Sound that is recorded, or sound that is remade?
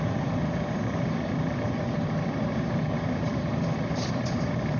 remade